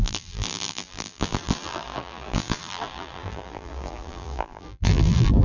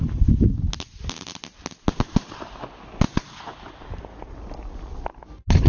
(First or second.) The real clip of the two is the second